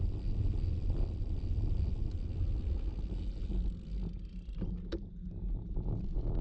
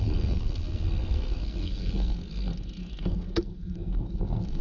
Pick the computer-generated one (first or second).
second